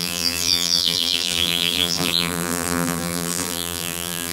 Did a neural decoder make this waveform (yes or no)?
yes